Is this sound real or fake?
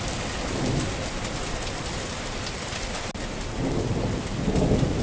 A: real